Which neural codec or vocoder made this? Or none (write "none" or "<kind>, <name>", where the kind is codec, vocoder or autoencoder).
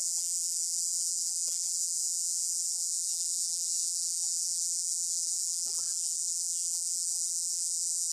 vocoder, BigVGAN v2